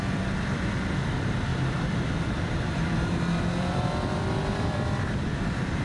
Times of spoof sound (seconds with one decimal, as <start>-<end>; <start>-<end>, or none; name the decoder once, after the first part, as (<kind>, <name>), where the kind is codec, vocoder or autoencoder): 0.0-5.8 (vocoder, BigVGAN v2)